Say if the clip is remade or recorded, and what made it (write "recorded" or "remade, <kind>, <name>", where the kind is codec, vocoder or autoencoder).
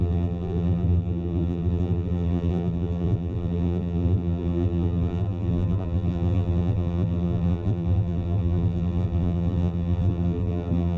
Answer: remade, vocoder, BigVGAN v2